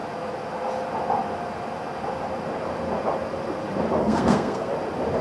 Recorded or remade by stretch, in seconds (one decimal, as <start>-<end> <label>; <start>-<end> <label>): 0.0-4.0 recorded; 4.0-4.7 remade; 4.7-5.2 recorded